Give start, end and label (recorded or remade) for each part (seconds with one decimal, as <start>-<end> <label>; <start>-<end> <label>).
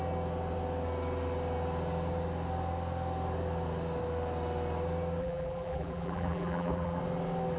0.0-5.2 recorded; 5.2-7.0 remade; 7.0-7.6 recorded